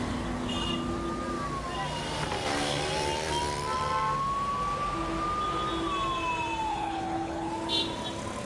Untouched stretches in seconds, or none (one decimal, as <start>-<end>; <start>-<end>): 0.0-6.7; 7.5-8.4